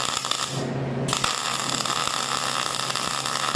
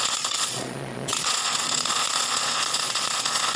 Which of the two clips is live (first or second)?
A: first